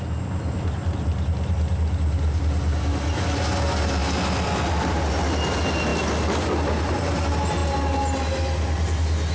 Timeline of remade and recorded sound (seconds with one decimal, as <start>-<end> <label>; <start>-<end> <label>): 0.0-9.3 recorded